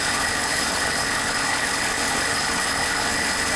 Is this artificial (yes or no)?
yes